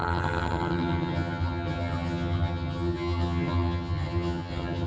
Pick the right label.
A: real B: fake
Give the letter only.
B